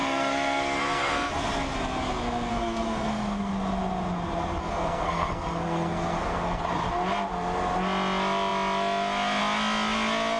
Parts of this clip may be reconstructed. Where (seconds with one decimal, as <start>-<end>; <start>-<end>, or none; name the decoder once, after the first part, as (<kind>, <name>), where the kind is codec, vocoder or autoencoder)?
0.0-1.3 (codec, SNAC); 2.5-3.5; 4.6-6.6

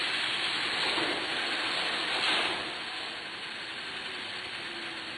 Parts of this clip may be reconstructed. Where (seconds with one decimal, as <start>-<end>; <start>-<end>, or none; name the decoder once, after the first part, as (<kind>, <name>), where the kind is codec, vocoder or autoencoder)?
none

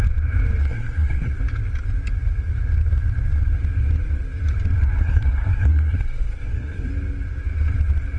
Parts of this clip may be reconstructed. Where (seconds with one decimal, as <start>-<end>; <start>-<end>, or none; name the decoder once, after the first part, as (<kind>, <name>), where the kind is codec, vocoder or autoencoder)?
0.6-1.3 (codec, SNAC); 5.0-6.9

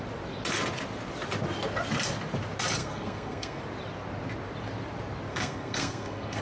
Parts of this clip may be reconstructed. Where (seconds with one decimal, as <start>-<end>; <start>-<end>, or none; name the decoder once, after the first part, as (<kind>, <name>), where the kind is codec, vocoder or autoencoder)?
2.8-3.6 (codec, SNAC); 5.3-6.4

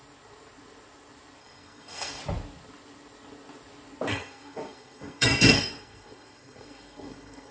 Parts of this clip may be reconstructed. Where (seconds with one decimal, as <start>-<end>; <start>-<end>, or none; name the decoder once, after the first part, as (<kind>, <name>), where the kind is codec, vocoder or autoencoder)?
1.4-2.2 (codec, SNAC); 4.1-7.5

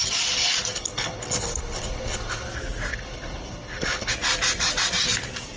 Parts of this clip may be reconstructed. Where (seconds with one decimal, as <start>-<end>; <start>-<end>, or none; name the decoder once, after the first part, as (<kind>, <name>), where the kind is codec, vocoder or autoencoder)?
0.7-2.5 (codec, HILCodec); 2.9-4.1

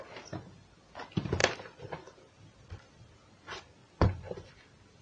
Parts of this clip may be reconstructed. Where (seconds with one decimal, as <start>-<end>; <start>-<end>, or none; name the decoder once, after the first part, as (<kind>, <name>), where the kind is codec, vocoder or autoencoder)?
3.8-4.5 (vocoder, Vocos)